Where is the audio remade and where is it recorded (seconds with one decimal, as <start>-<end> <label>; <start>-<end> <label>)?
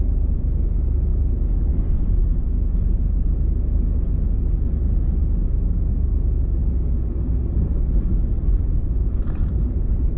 0.0-1.1 recorded; 1.1-1.7 remade; 1.7-10.2 recorded